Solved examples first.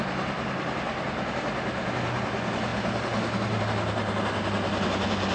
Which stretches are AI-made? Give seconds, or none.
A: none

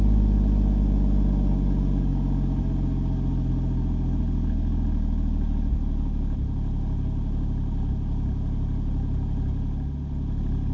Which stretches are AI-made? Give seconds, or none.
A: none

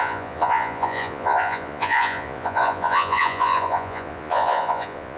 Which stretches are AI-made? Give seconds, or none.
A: 0.0-5.2

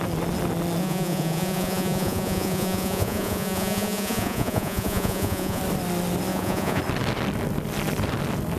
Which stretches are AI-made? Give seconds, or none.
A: 0.8-5.6; 6.3-6.8